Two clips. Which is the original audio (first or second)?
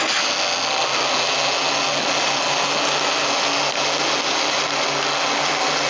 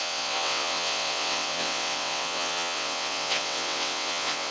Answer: first